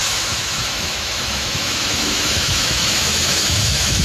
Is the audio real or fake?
fake